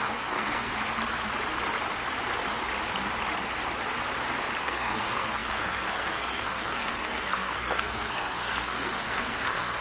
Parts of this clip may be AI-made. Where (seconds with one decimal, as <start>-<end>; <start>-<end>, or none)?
0.0-0.7; 4.6-9.8